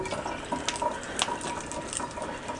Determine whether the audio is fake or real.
real